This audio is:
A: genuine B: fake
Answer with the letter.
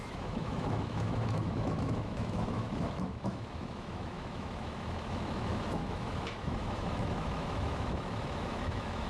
B